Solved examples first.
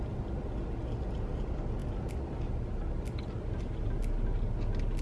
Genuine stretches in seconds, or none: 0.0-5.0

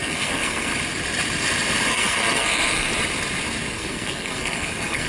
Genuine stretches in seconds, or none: 0.7-1.9; 2.9-3.7

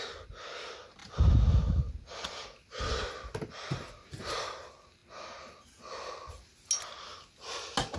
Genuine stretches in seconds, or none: 0.0-8.0